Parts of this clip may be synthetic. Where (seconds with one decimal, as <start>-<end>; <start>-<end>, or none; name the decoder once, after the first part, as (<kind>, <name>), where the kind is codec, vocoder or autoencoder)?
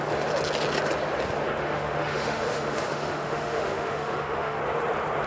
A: 1.6-4.6 (autoencoder, DAC-VAE)